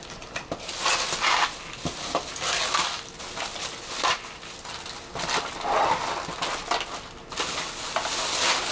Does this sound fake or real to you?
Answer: real